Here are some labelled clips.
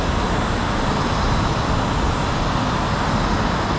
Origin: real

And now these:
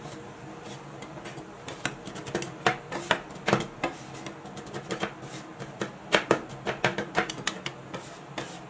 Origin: real